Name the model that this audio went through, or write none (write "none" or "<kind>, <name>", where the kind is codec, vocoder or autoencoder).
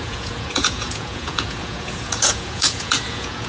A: vocoder, Vocos